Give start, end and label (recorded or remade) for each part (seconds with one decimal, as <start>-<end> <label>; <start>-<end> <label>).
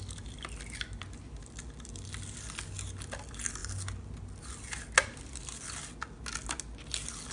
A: 0.0-7.3 recorded